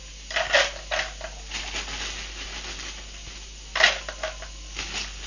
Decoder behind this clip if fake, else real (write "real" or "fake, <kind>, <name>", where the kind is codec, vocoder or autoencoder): real